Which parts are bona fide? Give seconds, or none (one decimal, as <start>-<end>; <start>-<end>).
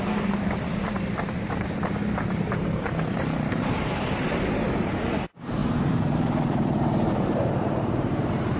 none